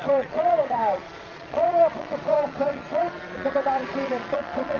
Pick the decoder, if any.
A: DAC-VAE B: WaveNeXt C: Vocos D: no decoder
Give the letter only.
C